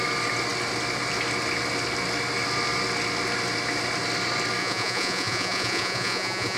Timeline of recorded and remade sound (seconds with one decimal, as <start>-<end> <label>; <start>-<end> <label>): 0.0-4.6 recorded; 4.6-6.6 remade